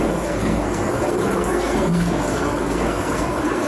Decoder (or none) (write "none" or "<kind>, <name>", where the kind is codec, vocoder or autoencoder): codec, SNAC